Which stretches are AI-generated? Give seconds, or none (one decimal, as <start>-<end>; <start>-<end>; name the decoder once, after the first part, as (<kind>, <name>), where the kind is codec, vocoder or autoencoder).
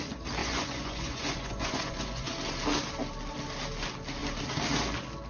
0.4-2.3 (vocoder, Vocos)